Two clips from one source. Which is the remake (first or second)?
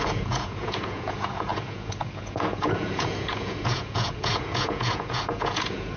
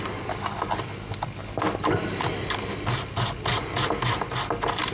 first